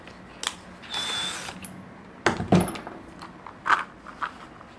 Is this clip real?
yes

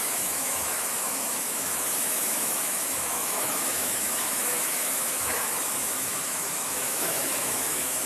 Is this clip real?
no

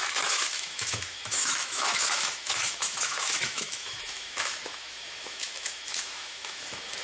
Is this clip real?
no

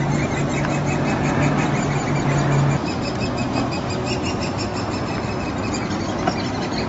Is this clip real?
yes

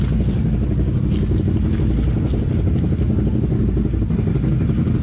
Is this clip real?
yes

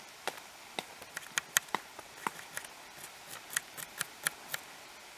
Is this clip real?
yes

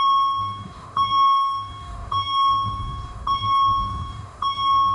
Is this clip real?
no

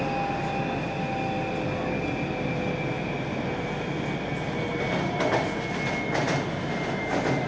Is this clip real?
yes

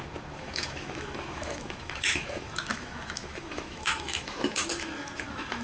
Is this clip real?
no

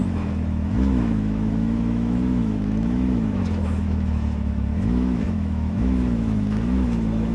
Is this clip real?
no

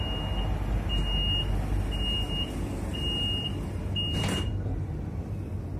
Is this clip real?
yes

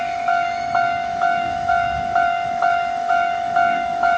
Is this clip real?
no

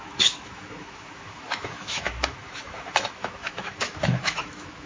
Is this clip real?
no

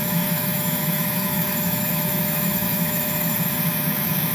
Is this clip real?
no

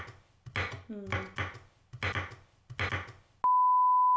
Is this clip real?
yes